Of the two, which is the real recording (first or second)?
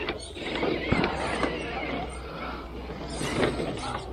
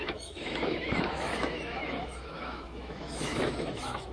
first